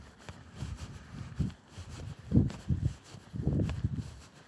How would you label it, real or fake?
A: real